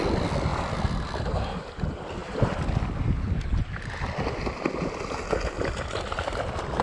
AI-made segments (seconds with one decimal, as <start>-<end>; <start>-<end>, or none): none